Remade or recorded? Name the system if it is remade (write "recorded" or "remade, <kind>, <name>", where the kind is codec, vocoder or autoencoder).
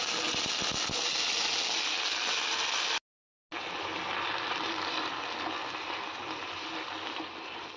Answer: recorded